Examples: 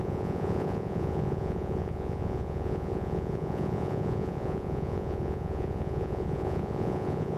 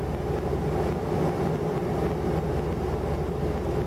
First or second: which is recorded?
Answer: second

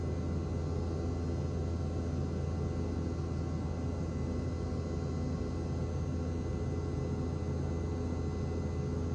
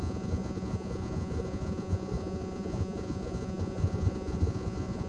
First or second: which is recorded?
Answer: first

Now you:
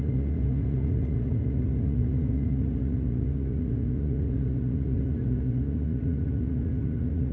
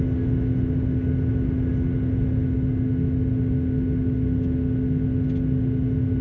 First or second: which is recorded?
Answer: second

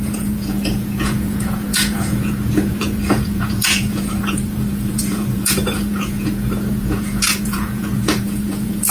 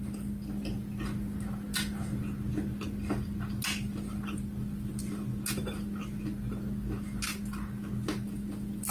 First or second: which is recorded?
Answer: second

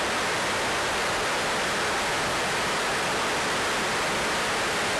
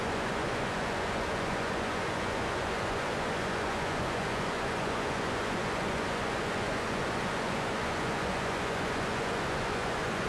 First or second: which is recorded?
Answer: first